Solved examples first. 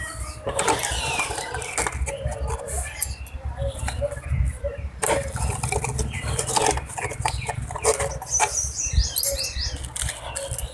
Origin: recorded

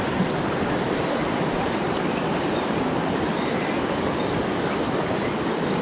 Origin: recorded